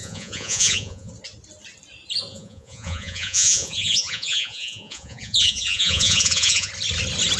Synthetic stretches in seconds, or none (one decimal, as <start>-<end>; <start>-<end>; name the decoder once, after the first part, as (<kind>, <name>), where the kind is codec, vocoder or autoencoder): 0.0-1.1 (vocoder, Vocos); 2.3-6.7